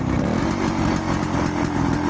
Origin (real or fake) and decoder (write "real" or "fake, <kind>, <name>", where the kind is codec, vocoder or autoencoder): real